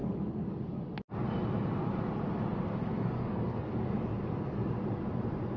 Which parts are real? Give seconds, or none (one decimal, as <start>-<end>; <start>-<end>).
0.8-2.9; 4.7-5.6